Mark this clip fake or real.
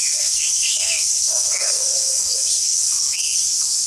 fake